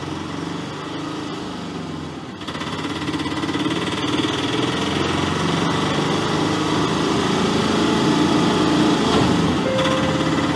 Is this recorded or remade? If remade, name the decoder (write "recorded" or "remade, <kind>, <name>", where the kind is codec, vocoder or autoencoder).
recorded